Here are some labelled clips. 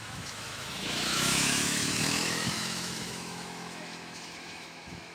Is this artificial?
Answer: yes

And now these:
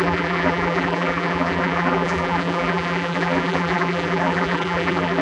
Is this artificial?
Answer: yes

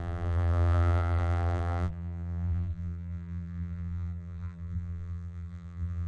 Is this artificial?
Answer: yes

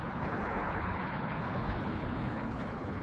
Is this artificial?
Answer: yes